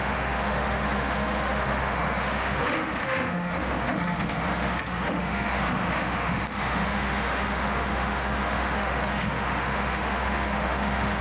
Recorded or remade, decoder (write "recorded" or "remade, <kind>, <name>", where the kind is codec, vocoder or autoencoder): remade, autoencoder, DAC-VAE